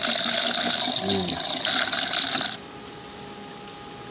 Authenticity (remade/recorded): recorded